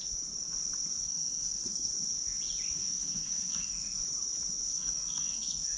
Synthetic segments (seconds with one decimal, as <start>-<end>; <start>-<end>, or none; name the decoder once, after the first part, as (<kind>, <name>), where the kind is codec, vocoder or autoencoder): 1.0-1.9 (codec, SNAC); 2.8-4.0; 4.7-5.8